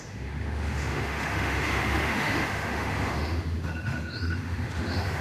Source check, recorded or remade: remade